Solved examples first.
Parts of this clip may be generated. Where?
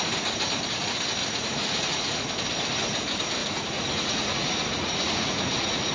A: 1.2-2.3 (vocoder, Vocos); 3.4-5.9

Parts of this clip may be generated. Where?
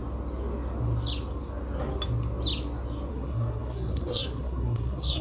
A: 3.1-5.2 (codec, SNAC)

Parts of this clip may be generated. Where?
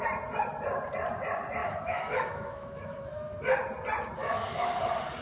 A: 1.6-3.4 (autoencoder, DAC-VAE); 4.2-4.8